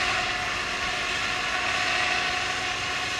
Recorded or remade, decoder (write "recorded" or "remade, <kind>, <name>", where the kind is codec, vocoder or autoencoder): recorded